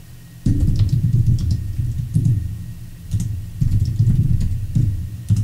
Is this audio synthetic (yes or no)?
no